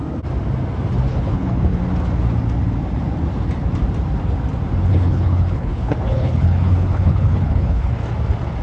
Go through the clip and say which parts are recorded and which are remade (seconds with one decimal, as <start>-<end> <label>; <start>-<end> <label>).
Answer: 0.0-1.1 recorded; 1.1-1.8 remade; 1.8-4.9 recorded; 4.9-7.9 remade; 7.9-8.6 recorded